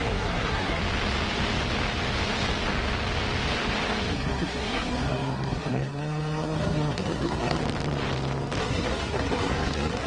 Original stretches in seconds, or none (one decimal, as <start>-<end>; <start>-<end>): 0.8-4.1; 7.6-8.6